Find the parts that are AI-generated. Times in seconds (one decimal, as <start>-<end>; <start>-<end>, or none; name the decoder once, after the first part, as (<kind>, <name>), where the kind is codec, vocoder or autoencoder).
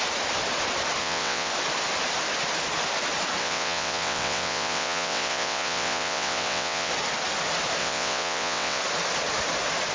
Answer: 1.0-1.5 (vocoder, WaveNeXt); 3.4-6.9; 7.8-8.8